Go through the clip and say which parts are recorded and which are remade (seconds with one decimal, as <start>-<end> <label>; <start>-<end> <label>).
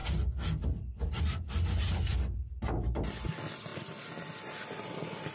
0.0-5.3 recorded